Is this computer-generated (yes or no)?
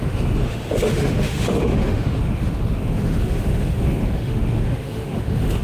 yes